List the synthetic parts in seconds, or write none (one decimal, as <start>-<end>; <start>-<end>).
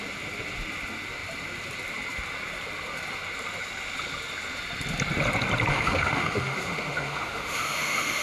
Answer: 5.7-8.2